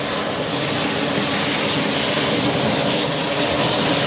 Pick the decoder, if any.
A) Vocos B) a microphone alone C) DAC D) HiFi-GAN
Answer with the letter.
B